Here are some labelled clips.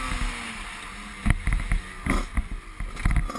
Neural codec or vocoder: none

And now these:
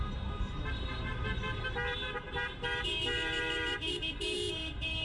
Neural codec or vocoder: vocoder, BigVGAN v2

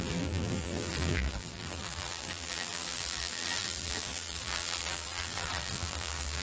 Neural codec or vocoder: vocoder, BigVGAN v2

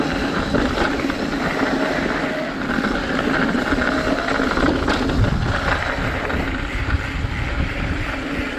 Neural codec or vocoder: none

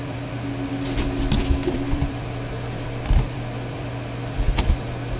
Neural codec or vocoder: vocoder, BigVGAN v2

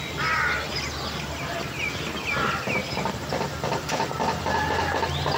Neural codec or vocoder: none